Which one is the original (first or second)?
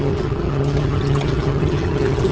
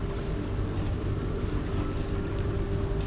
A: second